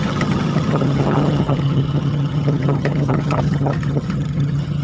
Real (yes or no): no